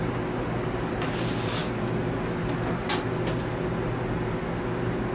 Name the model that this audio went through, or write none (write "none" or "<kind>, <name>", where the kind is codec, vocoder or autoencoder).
none